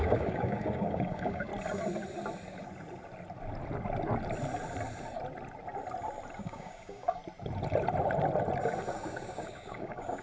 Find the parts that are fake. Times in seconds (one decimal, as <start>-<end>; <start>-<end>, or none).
0.0-1.5; 6.4-7.2; 8.9-10.2